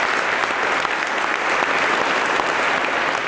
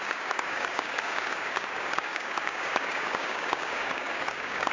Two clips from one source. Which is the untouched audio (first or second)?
first